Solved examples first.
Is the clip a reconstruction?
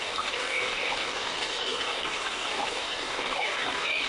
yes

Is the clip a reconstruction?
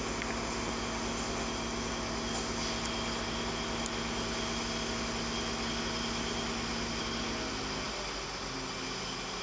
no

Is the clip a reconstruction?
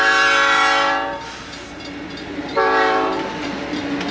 no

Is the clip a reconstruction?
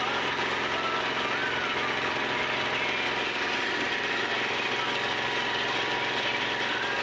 no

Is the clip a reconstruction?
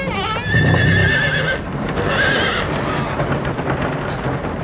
no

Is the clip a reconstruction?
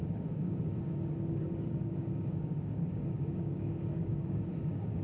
yes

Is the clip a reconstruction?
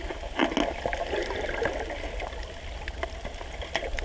no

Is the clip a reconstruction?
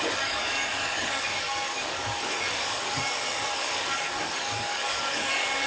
yes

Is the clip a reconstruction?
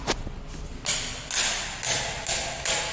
no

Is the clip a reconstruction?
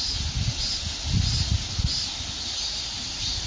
no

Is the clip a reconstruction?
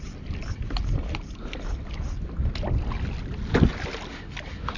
no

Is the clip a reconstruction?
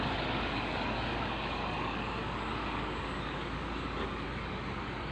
yes